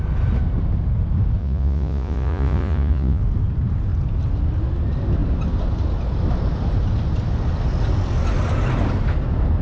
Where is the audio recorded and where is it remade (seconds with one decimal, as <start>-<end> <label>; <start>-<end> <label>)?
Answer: 0.0-1.4 recorded; 1.4-3.2 remade; 3.2-9.6 recorded